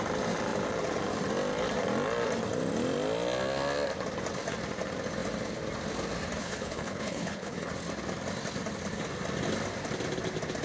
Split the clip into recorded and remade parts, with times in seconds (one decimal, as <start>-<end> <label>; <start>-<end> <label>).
0.0-6.4 recorded; 6.4-7.7 remade; 7.7-10.6 recorded